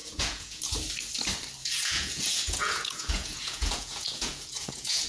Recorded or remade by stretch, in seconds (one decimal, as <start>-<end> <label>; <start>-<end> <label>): 0.0-0.6 remade; 0.6-1.6 recorded; 1.6-5.1 remade